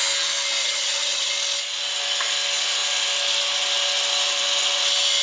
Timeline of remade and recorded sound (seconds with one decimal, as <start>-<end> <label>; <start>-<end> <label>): 0.0-0.6 recorded; 0.6-1.3 remade; 1.3-5.2 recorded